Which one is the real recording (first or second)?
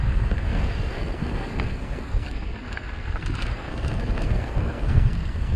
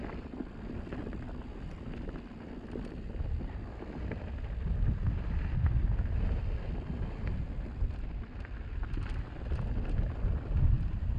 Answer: second